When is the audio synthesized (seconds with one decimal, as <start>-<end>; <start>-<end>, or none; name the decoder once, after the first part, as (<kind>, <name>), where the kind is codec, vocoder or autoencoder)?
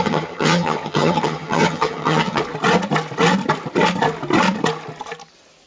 0.0-2.4 (vocoder, HiFi-GAN)